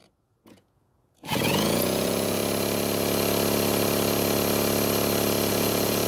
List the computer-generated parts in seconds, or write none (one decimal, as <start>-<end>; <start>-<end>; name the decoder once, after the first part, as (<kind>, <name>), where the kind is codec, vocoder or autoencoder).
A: 0.0-2.4 (vocoder, Vocos); 5.5-6.1

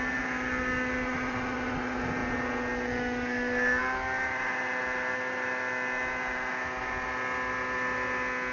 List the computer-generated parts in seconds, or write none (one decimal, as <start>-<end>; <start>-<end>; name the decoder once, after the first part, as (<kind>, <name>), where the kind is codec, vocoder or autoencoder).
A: none

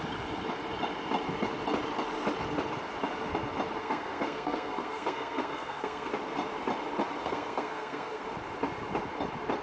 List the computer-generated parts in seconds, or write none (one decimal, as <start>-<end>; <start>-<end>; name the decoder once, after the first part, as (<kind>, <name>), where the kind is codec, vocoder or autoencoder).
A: 3.8-6.1 (codec, SNAC); 7.2-8.2

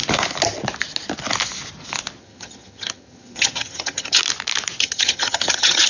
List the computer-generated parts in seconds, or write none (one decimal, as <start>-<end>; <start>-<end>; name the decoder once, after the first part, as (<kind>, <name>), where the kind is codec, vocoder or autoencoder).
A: 2.2-4.2 (vocoder, HiFi-GAN); 4.8-5.9

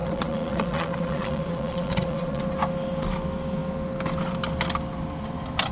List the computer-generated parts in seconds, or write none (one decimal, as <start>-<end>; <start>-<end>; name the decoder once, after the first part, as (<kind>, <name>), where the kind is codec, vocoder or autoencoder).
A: 0.0-2.4 (vocoder, Vocos)